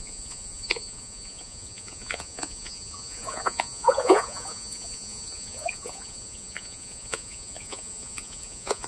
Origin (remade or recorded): remade